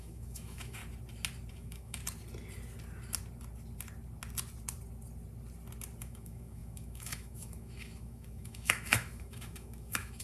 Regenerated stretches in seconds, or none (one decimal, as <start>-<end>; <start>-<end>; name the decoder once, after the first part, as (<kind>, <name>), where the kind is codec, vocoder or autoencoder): 0.0-0.8 (autoencoder, DAC-VAE); 1.5-2.0; 6.0-10.2